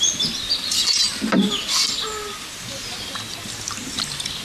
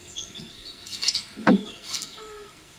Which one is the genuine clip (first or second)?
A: first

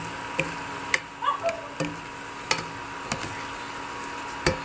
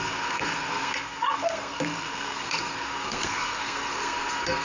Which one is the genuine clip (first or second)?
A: first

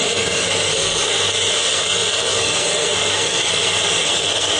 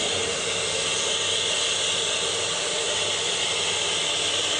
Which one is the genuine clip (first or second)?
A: second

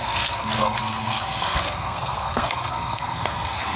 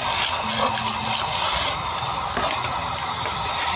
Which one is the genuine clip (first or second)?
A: second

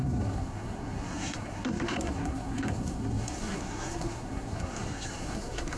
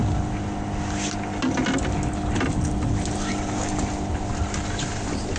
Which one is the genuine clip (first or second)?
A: second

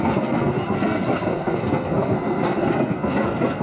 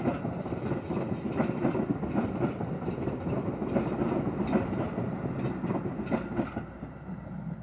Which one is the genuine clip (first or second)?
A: second